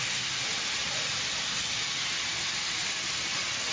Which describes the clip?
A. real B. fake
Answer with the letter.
A